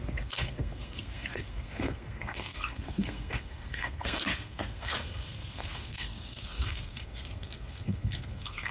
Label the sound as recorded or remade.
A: remade